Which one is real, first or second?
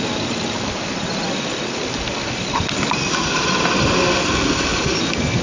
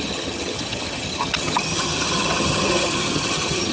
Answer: first